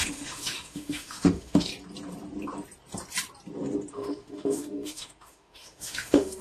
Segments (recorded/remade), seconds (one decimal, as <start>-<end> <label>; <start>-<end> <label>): 0.0-1.7 remade; 1.7-3.9 recorded; 3.9-6.4 remade